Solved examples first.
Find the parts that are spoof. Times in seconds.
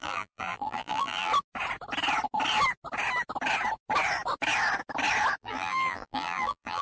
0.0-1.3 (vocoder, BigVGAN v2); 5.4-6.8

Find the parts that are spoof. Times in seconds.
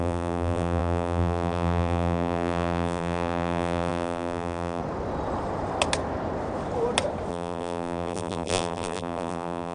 0.0-4.8 (vocoder, BigVGAN v2); 7.3-9.7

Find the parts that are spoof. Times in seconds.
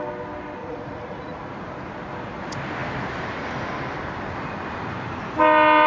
0.6-1.5 (vocoder, Vocos)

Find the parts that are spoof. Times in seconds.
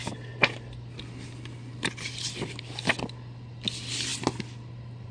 none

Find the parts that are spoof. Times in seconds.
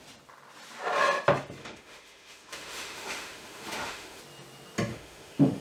1.6-4.2 (autoencoder, DAC-VAE); 4.9-5.6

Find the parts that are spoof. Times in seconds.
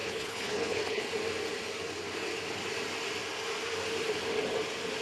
0.0-1.0 (codec, HILCodec)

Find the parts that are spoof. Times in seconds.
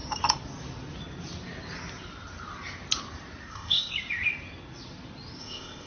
3.5-3.9 (codec, ZipCodec); 5.4-5.9